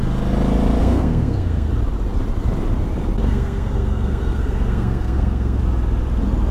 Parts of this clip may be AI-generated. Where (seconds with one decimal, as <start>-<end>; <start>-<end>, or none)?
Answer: 0.8-1.7; 3.2-5.6